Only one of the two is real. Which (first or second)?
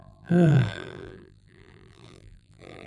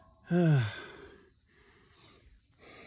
second